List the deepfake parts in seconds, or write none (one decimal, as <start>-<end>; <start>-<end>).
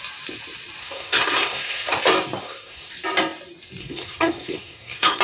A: 0.8-1.9; 2.4-2.9; 3.8-5.2